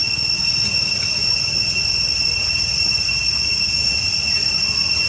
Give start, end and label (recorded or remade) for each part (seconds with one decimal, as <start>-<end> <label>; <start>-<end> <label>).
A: 0.0-5.1 recorded